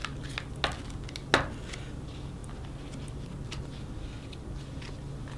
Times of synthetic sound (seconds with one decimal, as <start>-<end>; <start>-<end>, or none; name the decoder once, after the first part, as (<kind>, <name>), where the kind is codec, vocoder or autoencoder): none

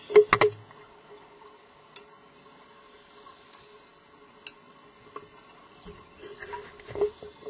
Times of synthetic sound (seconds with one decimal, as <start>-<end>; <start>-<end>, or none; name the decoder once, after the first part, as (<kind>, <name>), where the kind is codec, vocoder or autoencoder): none

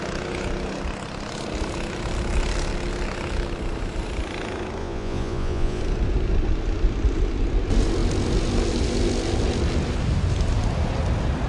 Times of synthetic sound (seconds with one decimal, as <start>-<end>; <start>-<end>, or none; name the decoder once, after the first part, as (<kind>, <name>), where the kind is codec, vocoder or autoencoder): 4.8-5.8 (vocoder, Vocos)